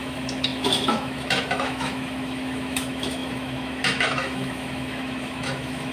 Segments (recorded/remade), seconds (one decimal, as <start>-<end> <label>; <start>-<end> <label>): 0.0-5.9 remade

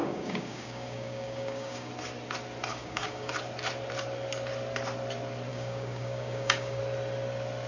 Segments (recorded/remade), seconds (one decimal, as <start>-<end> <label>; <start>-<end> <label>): 0.0-1.9 remade; 1.9-2.7 recorded; 2.7-3.3 remade; 3.3-5.5 recorded; 5.5-6.8 remade; 6.8-7.7 recorded

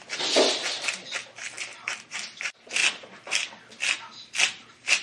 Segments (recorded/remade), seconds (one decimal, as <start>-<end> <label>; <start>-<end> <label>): 0.0-5.0 recorded

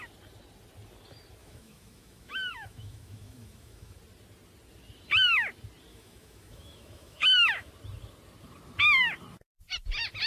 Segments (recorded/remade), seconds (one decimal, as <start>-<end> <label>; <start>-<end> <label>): 0.0-1.4 recorded; 1.4-4.0 remade; 4.0-5.9 recorded; 5.9-7.7 remade; 7.7-10.3 recorded

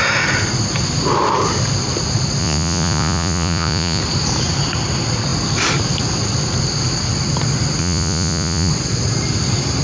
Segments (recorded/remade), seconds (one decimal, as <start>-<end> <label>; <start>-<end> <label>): 0.0-2.4 recorded; 2.4-4.0 remade; 4.0-7.8 recorded; 7.8-8.7 remade; 8.7-9.8 recorded